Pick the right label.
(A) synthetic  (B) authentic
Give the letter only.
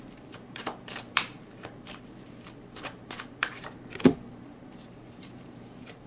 A